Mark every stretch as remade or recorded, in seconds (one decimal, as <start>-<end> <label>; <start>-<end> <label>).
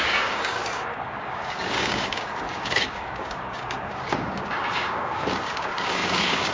0.0-6.5 remade